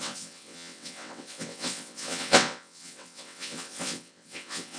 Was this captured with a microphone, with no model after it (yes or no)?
no